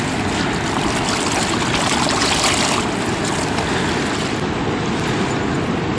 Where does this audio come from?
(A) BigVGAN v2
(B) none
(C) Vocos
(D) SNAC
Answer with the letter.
B